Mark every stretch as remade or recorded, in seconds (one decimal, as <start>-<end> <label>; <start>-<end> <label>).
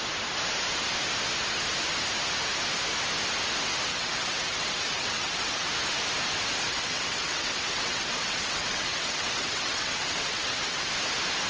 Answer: 0.0-3.9 recorded; 3.9-5.7 remade; 5.7-6.7 recorded; 6.7-10.9 remade; 10.9-11.5 recorded